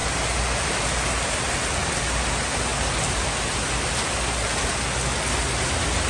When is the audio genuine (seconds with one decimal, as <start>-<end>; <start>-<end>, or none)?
0.0-6.1